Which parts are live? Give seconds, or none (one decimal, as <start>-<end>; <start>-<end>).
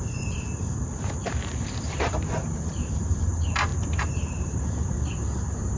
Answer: none